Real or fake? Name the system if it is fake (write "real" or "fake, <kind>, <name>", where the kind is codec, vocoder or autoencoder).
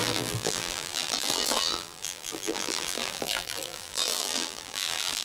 fake, vocoder, BigVGAN v2